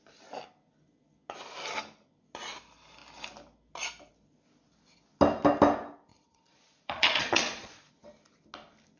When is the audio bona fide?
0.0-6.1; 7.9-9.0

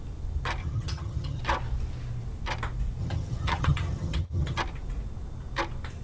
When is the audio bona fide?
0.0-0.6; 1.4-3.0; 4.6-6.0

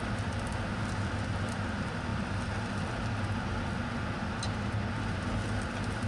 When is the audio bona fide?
0.0-6.1

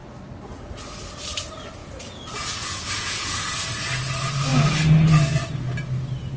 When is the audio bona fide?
0.0-1.8; 3.5-6.4